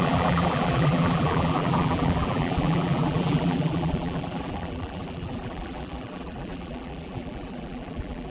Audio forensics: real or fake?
fake